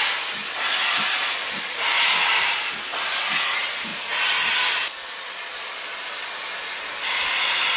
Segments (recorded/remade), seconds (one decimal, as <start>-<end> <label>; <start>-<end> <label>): 0.0-7.8 recorded